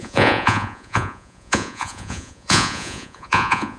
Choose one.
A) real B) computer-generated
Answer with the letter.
B